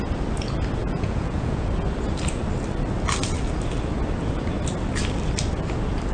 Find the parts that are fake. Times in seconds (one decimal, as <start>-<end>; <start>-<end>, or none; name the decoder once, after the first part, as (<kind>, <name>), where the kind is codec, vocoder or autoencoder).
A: 0.8-1.7 (vocoder, Vocos)